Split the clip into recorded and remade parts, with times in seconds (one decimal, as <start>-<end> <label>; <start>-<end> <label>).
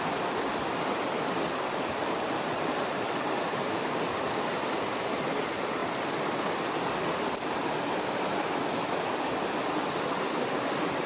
0.0-11.1 recorded